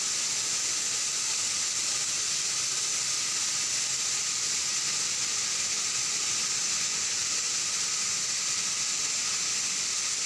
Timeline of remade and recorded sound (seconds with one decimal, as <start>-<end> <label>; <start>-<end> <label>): 0.0-10.3 recorded